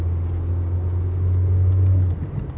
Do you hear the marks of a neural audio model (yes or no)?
no